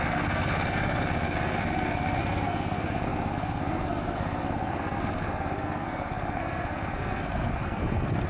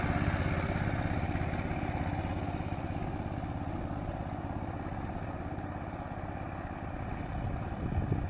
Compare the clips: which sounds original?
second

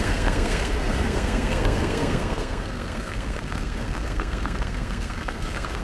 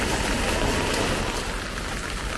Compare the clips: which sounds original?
second